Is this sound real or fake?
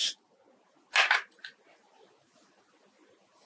real